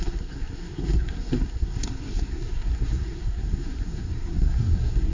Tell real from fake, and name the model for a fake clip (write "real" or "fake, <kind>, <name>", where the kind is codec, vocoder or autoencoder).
fake, codec, SNAC